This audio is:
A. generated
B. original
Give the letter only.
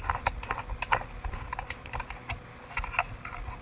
B